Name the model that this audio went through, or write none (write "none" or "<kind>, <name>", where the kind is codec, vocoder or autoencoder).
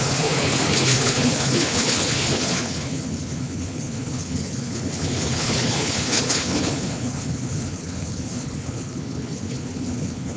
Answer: codec, HILCodec